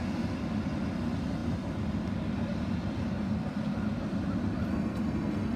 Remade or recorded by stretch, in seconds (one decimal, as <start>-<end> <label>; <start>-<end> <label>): 0.0-4.7 recorded; 4.7-5.6 remade